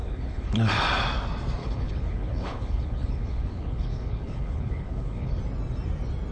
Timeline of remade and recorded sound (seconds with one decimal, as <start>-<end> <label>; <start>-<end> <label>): 0.0-0.7 remade; 0.7-1.6 recorded; 1.6-5.4 remade; 5.4-6.3 recorded